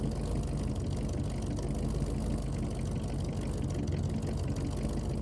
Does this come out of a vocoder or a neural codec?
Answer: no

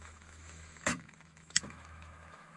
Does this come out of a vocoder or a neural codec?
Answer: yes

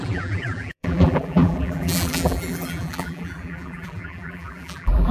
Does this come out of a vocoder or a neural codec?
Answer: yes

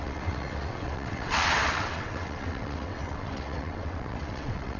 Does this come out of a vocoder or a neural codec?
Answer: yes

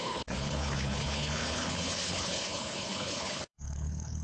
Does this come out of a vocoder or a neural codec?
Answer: yes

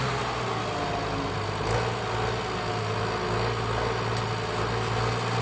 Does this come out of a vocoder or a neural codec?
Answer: no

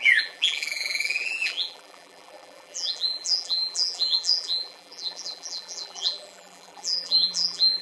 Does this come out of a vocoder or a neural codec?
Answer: yes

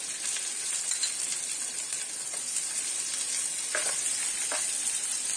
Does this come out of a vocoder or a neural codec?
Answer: no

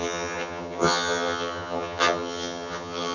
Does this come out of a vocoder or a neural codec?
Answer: yes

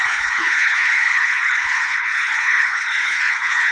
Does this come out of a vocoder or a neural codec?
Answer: yes